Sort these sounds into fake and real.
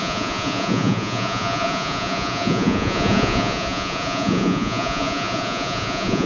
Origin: fake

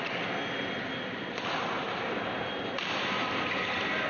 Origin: real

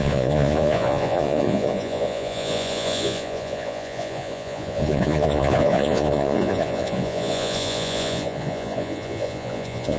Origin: fake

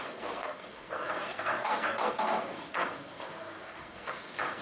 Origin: fake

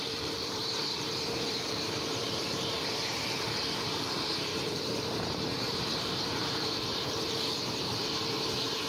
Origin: fake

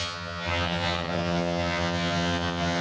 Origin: fake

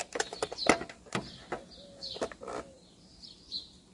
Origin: real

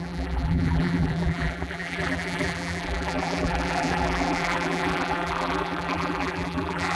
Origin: fake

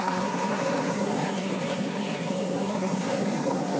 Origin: fake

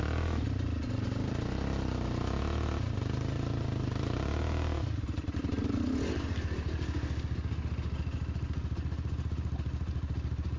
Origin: real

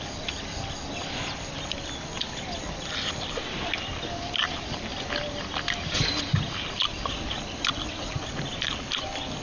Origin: real